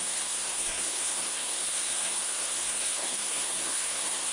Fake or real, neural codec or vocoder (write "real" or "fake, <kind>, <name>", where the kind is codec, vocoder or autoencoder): fake, codec, SNAC